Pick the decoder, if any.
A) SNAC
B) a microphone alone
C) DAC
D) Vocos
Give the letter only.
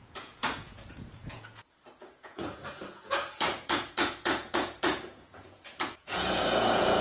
D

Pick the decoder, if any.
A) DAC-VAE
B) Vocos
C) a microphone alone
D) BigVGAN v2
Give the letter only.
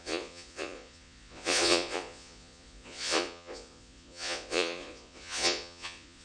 B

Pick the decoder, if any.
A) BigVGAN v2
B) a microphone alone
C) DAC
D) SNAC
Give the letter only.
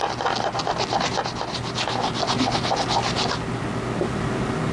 B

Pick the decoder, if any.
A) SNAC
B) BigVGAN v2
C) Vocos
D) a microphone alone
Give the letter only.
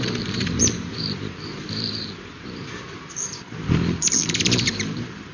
B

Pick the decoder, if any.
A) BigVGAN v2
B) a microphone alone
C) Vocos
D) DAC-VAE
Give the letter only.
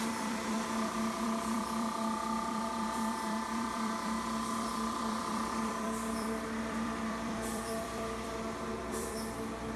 A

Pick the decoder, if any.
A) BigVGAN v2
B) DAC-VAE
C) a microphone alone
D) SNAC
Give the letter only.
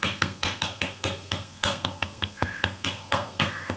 D